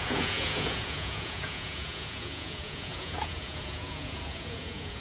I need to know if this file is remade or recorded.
remade